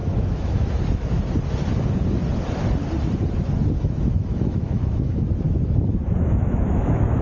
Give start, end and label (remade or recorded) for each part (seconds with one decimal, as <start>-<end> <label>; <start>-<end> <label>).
0.0-1.2 remade; 1.2-3.7 recorded; 3.7-7.2 remade